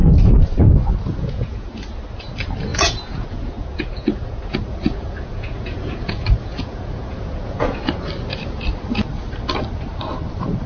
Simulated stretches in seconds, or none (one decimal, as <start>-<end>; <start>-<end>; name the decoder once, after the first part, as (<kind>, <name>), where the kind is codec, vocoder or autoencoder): 1.1-1.7 (vocoder, Vocos); 2.7-7.9